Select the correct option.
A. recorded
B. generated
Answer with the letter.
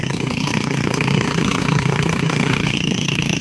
B